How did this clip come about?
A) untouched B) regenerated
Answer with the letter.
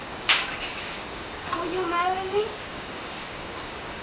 B